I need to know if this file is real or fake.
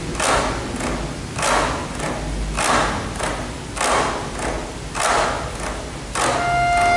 real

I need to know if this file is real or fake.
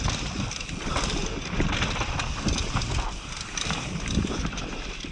fake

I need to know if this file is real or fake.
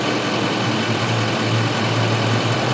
real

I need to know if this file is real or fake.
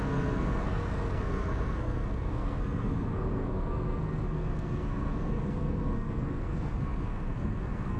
fake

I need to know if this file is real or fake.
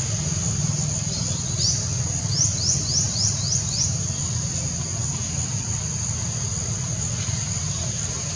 real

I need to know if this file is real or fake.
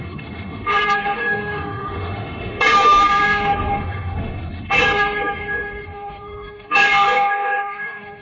fake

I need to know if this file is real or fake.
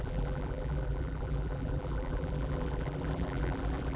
fake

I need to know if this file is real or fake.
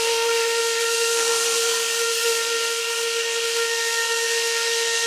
fake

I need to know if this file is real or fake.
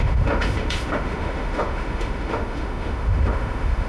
fake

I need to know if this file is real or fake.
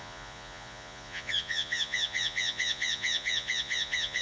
fake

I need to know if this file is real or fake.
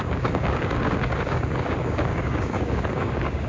fake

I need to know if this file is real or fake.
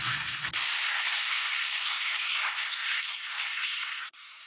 fake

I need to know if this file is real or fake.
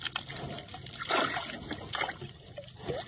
real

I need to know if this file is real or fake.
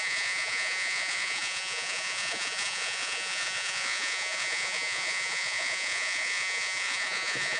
fake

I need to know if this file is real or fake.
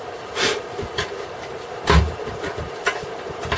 fake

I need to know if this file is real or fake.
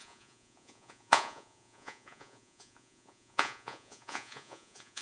fake